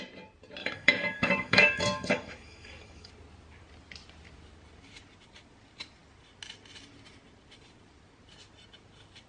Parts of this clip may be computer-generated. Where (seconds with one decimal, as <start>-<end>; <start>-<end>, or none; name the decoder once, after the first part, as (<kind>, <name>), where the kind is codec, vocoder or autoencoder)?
0.6-3.1 (codec, DAC)